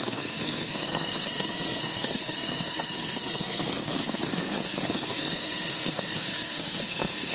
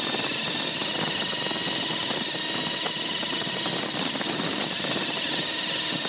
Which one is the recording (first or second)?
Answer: second